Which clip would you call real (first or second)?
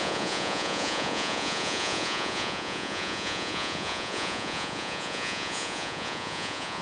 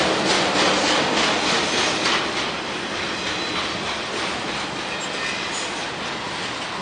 second